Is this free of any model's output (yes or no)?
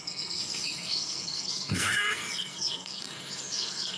no